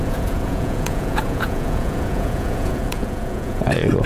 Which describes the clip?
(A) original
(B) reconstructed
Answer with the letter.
B